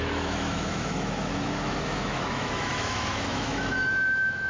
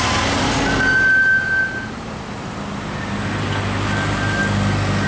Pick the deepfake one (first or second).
first